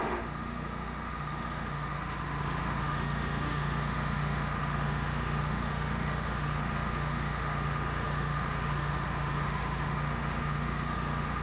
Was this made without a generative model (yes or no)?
no